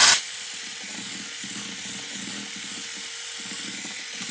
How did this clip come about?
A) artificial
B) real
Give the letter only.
B